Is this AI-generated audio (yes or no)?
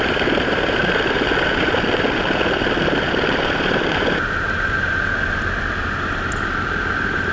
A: no